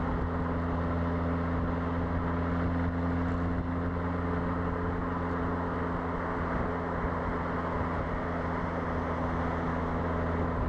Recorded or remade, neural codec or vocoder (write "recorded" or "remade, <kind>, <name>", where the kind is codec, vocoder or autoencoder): recorded